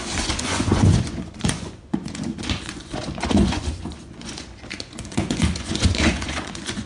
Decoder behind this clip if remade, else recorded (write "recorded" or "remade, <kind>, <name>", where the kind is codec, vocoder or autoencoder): remade, vocoder, Vocos